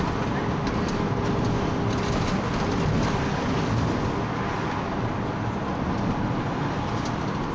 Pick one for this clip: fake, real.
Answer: real